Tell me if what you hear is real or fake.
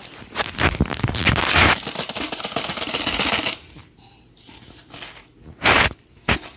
real